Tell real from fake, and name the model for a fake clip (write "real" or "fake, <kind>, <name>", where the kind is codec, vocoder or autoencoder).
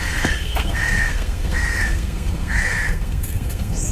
fake, codec, SNAC